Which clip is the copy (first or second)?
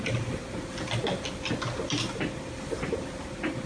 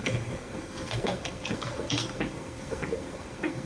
second